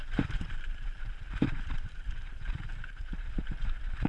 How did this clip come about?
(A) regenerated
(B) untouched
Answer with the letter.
A